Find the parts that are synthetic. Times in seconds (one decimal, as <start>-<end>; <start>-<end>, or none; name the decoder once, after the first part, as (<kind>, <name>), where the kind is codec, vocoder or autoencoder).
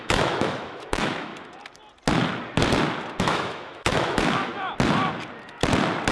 0.0-1.3 (autoencoder, DAC-VAE); 3.2-4.5